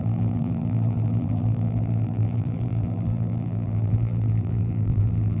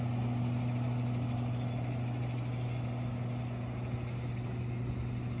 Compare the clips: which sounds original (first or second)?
second